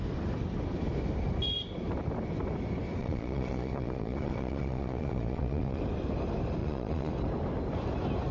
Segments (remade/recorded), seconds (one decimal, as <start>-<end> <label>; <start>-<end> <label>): 0.0-3.0 recorded; 3.0-5.8 remade; 5.8-6.6 recorded; 6.6-7.1 remade; 7.1-8.3 recorded